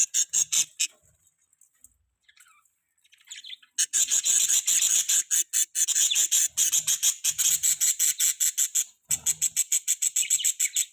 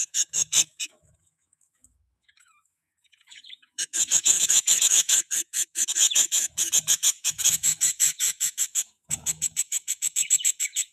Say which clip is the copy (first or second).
second